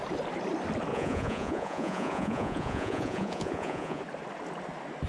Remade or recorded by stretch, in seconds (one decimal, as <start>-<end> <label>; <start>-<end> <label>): 0.0-0.9 recorded; 0.9-4.0 remade; 4.0-5.1 recorded